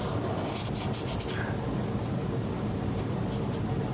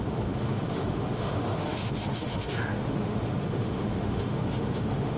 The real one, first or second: first